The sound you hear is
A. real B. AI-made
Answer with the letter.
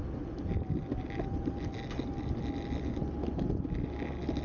A